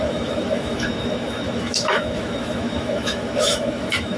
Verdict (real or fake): fake